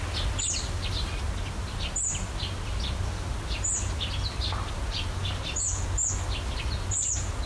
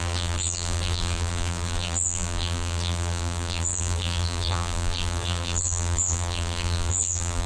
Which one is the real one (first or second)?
first